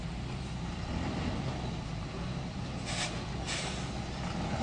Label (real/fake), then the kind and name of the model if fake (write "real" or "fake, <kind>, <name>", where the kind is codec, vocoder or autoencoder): real